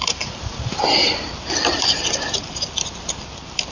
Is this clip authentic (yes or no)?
yes